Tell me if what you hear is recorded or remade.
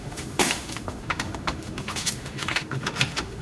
remade